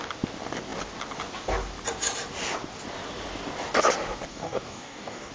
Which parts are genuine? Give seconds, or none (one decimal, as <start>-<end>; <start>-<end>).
0.0-4.3